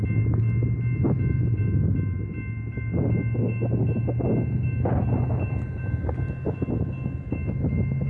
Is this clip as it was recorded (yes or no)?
yes